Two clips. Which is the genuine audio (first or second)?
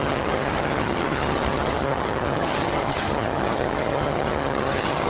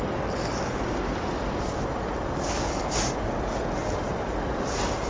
second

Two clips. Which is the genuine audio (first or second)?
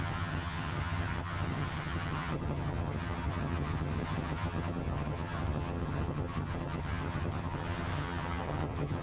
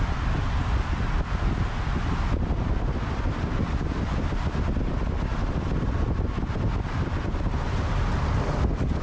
second